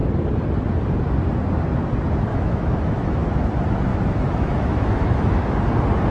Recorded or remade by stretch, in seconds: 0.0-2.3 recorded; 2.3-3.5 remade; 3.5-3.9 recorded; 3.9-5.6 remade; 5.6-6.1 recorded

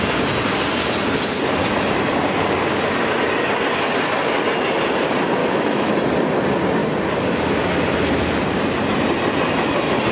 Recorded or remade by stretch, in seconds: 0.0-5.4 recorded; 5.4-5.9 remade; 5.9-10.1 recorded

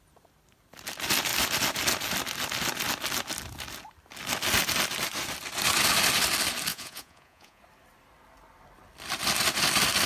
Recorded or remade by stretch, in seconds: 0.0-6.7 recorded; 6.7-7.6 remade; 7.6-10.1 recorded

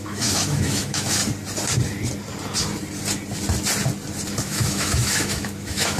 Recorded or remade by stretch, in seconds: 0.0-1.2 remade; 1.2-4.4 recorded; 4.4-6.0 remade

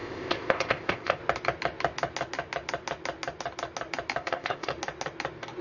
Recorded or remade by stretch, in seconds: 0.0-1.2 remade; 1.2-4.2 recorded; 4.2-4.7 remade; 4.7-5.6 recorded

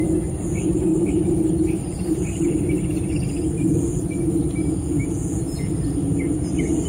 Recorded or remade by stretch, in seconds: 0.0-0.9 recorded; 0.9-2.5 remade; 2.5-6.9 recorded

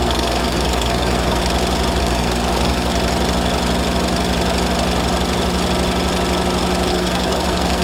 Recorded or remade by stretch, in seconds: 0.0-1.4 remade; 1.4-2.0 recorded; 2.0-2.9 remade; 2.9-6.9 recorded; 6.9-7.8 remade